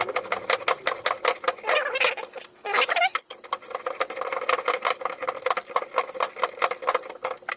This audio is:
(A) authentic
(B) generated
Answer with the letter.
A